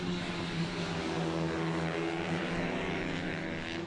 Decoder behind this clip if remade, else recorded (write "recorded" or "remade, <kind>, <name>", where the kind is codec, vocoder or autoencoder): remade, codec, DAC